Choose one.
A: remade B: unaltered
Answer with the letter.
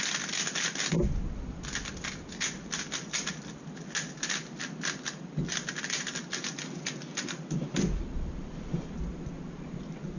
B